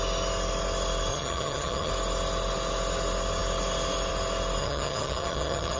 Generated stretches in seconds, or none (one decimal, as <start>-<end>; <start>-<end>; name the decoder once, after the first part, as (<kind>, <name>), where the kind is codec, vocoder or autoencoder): 1.1-1.9 (vocoder, HiFi-GAN); 4.6-5.8